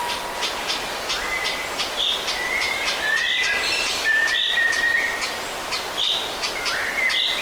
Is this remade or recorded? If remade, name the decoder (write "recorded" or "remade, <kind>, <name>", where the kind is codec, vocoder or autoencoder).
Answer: recorded